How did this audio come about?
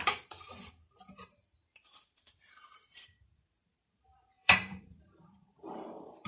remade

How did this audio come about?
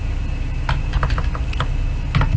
recorded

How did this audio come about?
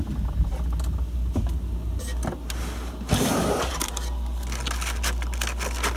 recorded